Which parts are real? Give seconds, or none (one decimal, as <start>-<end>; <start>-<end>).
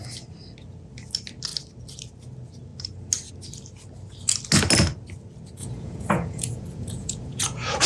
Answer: 0.0-5.6